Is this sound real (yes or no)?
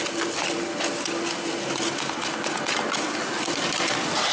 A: yes